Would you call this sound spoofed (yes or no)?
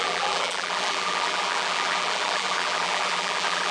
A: yes